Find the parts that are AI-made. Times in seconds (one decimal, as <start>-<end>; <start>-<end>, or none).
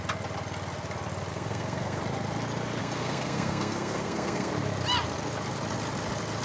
1.3-2.0; 2.8-4.5